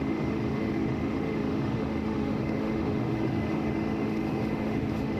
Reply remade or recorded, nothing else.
remade